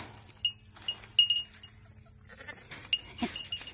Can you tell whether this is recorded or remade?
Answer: recorded